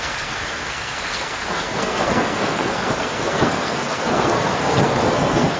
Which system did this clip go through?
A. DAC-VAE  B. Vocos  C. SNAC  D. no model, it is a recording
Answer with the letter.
C